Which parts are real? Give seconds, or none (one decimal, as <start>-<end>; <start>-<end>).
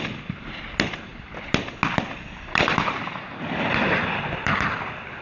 0.0-5.2